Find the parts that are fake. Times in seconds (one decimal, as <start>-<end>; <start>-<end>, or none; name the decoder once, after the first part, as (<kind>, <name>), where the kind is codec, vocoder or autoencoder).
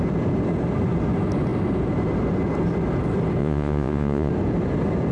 3.4-4.3 (vocoder, Vocos)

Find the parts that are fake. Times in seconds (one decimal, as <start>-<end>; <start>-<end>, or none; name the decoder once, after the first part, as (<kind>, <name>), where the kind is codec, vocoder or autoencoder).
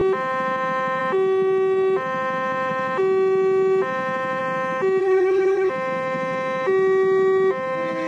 5.0-5.7 (codec, SNAC)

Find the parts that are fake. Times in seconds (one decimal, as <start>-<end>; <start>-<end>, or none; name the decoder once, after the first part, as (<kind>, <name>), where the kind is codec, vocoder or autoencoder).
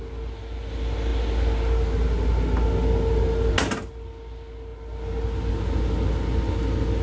none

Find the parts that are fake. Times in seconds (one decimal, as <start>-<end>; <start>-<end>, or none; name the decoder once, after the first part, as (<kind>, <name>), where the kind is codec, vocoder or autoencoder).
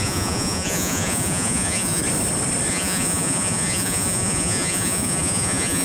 0.0-2.0 (vocoder, Vocos); 2.7-5.8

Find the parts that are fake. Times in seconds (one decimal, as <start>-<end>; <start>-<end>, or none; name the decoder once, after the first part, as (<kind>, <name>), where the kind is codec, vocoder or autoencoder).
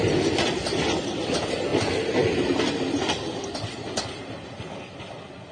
none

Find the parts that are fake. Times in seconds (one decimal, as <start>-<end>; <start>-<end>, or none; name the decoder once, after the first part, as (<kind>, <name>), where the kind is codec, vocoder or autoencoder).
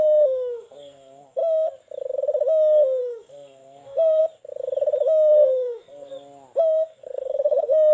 0.0-1.4 (codec, SNAC); 3.0-4.2; 5.3-6.1; 6.6-7.9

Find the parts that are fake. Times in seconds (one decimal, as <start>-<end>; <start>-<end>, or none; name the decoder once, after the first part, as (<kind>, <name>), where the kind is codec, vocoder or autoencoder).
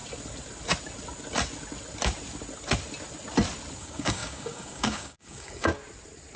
3.8-5.7 (codec, DAC)